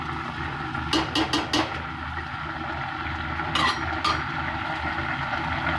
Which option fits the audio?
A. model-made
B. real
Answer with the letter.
B